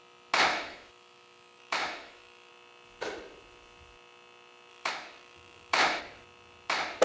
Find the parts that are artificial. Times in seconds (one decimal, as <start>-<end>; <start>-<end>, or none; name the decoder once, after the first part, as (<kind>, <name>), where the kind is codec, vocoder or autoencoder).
0.5-2.5 (autoencoder, DAC-VAE); 4.7-6.0